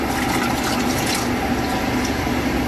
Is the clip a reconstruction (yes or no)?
no